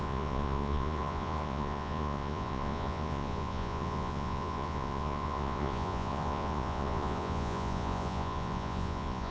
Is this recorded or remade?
remade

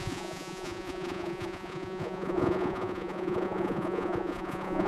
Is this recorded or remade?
remade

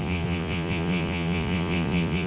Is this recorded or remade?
remade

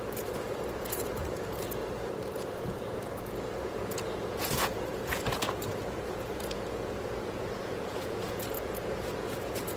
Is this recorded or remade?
remade